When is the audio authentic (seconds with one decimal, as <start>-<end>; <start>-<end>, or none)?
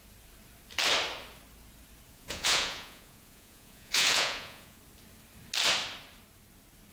0.0-2.1; 4.8-6.9